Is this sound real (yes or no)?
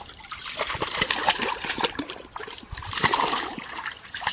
no